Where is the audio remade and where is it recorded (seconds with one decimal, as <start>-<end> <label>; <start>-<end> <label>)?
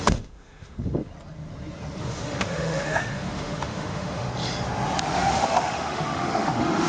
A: 0.0-1.1 remade; 1.1-2.0 recorded; 2.0-4.3 remade; 4.3-5.0 recorded; 5.0-6.9 remade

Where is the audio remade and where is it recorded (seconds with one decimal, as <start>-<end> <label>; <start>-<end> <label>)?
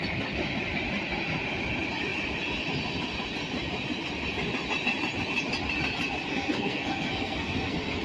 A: 0.0-6.3 recorded; 6.3-8.0 remade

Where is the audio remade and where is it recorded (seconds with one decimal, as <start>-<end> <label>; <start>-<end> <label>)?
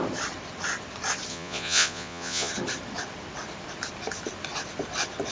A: 0.0-1.3 recorded; 1.3-2.5 remade; 2.5-5.3 recorded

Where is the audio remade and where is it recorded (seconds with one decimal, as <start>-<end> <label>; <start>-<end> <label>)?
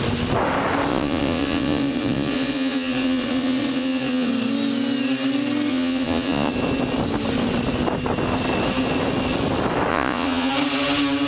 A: 0.0-0.9 recorded; 0.9-4.3 remade; 4.3-5.7 recorded; 5.7-6.5 remade; 6.5-9.9 recorded; 9.9-10.5 remade; 10.5-11.3 recorded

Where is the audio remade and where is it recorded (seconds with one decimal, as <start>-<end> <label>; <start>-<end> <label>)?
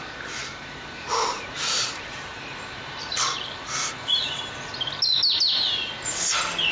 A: 0.0-0.4 recorded; 0.4-4.4 remade; 4.4-6.7 recorded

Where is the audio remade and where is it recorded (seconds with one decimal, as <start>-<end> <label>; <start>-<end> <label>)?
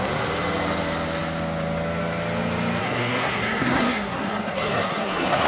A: 0.0-2.8 recorded; 2.8-5.5 remade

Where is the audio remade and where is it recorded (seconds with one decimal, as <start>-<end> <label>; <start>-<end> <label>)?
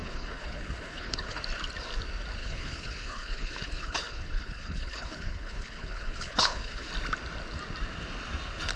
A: 0.0-1.4 remade; 1.4-2.4 recorded; 2.4-6.9 remade; 6.9-8.8 recorded